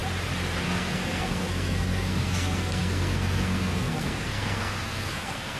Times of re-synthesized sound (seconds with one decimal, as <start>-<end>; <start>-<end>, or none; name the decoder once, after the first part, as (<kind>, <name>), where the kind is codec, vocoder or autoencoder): 0.6-5.6 (codec, SNAC)